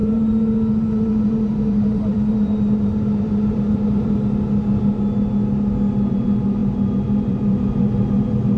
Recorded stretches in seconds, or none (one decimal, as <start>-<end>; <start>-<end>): 4.2-6.1